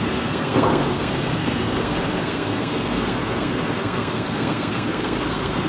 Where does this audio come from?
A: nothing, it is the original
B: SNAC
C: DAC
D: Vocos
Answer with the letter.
B